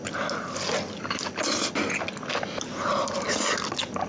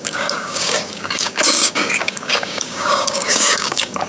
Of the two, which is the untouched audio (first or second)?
first